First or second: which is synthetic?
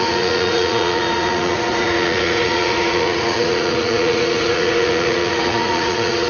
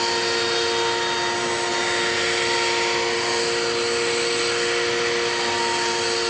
first